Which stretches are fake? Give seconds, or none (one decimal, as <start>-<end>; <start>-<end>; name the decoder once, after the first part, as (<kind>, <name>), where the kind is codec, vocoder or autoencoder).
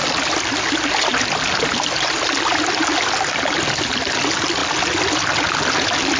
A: none